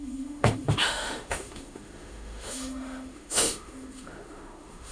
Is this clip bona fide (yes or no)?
no